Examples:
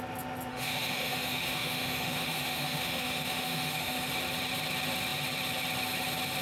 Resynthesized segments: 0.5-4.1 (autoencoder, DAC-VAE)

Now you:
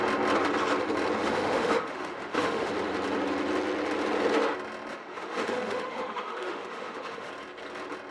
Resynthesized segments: 1.2-2.7 (autoencoder, DAC-VAE); 4.9-7.3

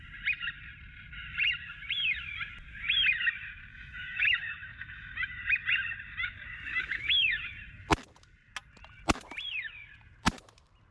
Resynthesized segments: 3.7-5.4 (autoencoder, DAC-VAE); 6.7-7.3

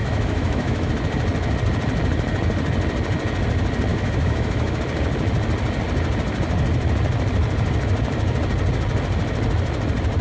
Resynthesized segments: 0.0-0.9 (autoencoder, DAC-VAE); 3.9-4.8